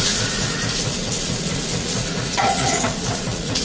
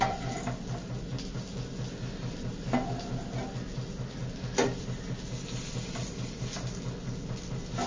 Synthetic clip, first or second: first